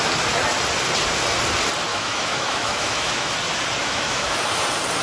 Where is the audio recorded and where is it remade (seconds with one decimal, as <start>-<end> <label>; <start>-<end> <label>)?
0.0-1.9 recorded; 1.9-3.3 remade; 3.3-3.8 recorded; 3.8-4.4 remade; 4.4-5.0 recorded